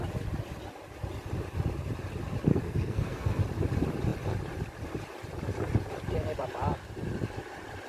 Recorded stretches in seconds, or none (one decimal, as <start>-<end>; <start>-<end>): 0.0-2.5; 3.4-7.9